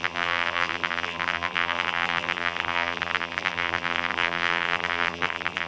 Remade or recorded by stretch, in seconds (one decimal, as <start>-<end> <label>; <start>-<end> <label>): 0.0-5.7 remade